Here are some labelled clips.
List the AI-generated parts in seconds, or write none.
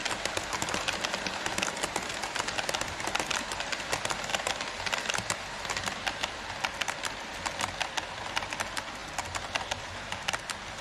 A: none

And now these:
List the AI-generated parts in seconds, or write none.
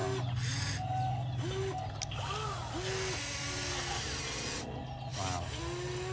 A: 5.1-5.6 (vocoder, BigVGAN v2)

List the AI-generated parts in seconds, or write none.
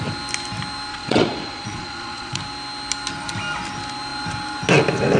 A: 0.9-2.4 (vocoder, Vocos)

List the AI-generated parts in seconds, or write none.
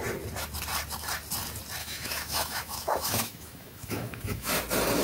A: 1.8-4.5 (autoencoder, DAC-VAE)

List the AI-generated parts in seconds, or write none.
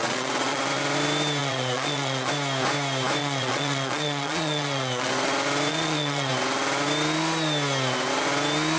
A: 0.0-0.6 (vocoder, Vocos); 1.4-2.3; 3.2-5.1; 5.7-6.3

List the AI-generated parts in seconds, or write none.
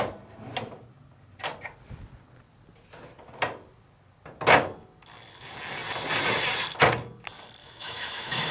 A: 7.6-8.5 (autoencoder, DAC-VAE)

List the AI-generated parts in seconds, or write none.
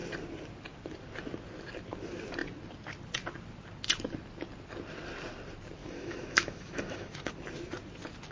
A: 5.8-7.3 (autoencoder, DAC-VAE)